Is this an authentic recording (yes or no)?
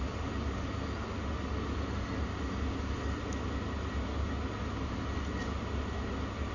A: yes